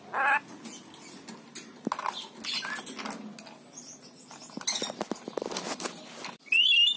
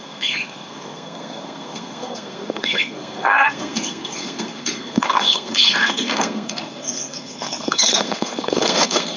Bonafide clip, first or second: first